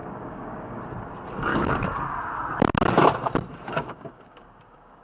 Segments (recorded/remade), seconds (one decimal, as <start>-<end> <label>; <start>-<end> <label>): 0.0-0.9 remade; 0.9-1.5 recorded; 1.5-2.0 remade; 2.0-3.7 recorded; 3.7-5.0 remade